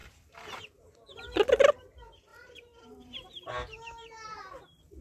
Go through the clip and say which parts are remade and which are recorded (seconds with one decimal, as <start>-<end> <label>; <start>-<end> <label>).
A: 0.0-0.6 remade; 0.6-2.3 recorded; 2.3-3.5 remade; 3.5-5.0 recorded